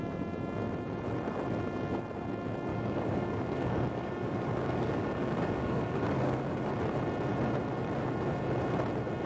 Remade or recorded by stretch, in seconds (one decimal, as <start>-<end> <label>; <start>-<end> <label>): 0.0-2.7 recorded; 2.7-6.7 remade; 6.7-9.3 recorded